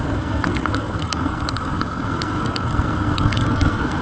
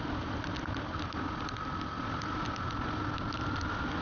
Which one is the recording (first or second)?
second